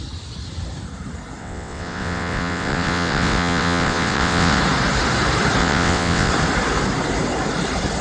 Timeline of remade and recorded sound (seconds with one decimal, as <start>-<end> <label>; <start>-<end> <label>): 0.0-1.4 recorded; 1.4-4.6 remade; 4.6-5.6 recorded; 5.6-6.3 remade; 6.3-8.0 recorded